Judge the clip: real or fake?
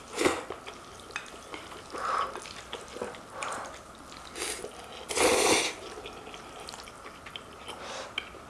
real